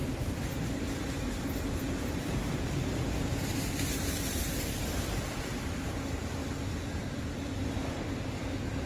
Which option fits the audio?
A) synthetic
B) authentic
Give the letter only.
B